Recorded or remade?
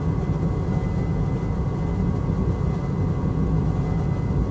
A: recorded